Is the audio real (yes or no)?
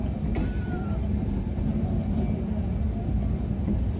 yes